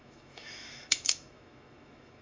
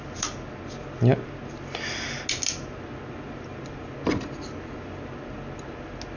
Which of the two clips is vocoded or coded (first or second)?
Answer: first